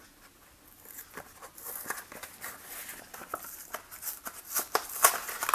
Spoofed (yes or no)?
no